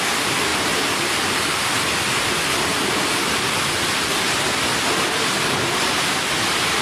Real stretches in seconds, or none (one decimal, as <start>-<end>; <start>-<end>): 0.0-2.7